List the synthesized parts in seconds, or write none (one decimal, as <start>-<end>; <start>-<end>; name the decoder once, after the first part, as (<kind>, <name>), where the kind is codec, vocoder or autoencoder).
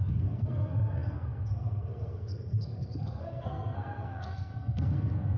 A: 0.0-5.4 (codec, SNAC)